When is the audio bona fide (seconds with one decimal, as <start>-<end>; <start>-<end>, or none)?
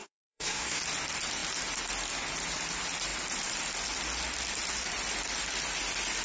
0.8-6.2